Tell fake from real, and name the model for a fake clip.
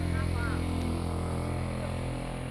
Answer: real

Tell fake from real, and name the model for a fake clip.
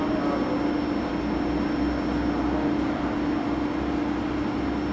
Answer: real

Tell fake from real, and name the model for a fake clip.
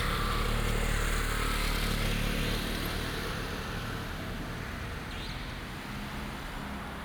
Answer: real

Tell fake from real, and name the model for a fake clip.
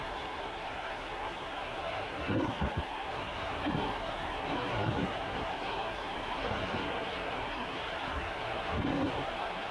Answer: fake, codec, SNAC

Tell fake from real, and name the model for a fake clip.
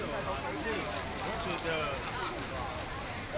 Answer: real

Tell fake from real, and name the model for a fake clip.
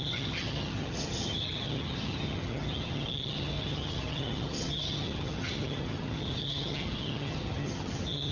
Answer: fake, vocoder, HiFi-GAN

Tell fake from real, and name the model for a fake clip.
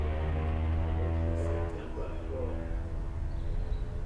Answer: real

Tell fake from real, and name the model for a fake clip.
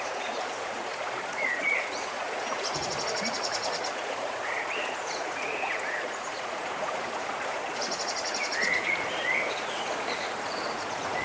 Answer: fake, vocoder, Vocos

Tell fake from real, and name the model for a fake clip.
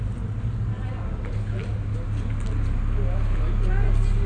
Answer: real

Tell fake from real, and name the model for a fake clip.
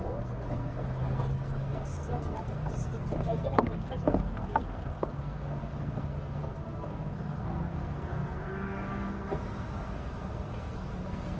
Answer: fake, codec, SNAC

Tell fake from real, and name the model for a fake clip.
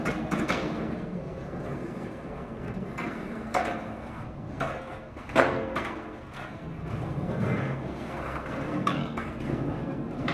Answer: fake, codec, SNAC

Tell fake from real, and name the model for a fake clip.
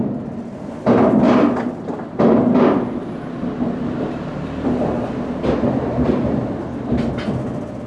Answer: real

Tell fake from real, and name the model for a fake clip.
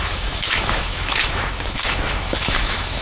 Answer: fake, autoencoder, DAC-VAE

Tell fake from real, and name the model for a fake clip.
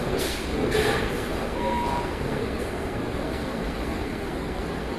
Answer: fake, codec, SNAC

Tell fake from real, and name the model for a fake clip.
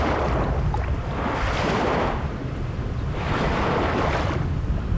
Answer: real